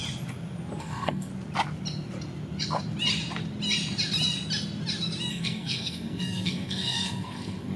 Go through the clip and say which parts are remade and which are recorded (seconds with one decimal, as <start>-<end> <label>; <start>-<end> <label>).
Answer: 0.0-0.8 recorded; 0.8-1.3 remade; 1.3-5.3 recorded; 5.3-7.8 remade